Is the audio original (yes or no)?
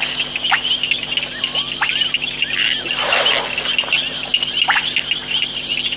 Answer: yes